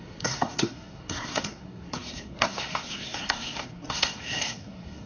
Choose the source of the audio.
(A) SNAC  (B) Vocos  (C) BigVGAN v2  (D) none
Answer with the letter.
A